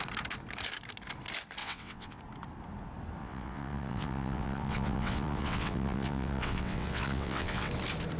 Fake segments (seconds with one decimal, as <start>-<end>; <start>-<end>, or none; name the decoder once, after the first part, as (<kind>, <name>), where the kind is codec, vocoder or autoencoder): 1.6-2.2 (vocoder, WaveNeXt); 3.2-7.7